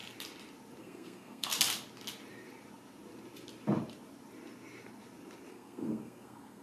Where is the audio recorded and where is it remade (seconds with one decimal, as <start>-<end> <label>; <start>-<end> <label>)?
0.0-0.8 recorded; 0.8-1.5 remade; 1.5-5.5 recorded; 5.5-6.6 remade